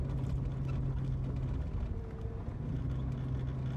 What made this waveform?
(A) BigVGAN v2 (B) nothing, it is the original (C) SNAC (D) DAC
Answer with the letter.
B